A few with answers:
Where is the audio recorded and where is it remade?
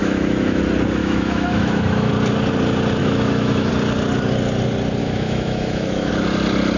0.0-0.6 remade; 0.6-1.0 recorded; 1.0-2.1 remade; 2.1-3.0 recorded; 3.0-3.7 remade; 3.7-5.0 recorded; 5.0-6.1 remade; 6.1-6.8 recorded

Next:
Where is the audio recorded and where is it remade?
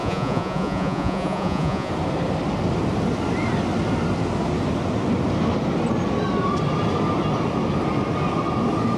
0.0-1.9 remade; 1.9-9.0 recorded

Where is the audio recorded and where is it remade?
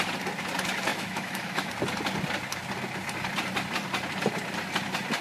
0.0-0.9 recorded; 0.9-1.7 remade; 1.7-5.2 recorded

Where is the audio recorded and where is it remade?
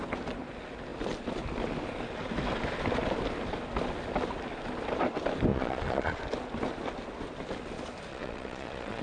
0.0-5.5 recorded; 5.5-6.2 remade; 6.2-8.1 recorded; 8.1-9.0 remade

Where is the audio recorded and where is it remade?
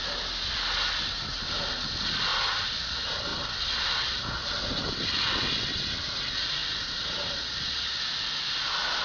0.0-9.0 recorded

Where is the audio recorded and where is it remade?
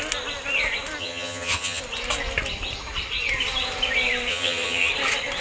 0.0-1.0 recorded; 1.0-1.8 remade; 1.8-4.3 recorded; 4.3-4.9 remade; 4.9-5.4 recorded